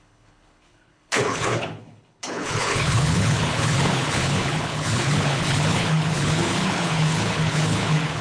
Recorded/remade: remade